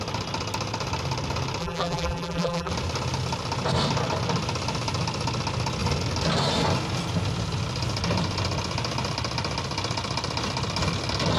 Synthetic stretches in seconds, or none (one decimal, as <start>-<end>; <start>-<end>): 1.6-2.7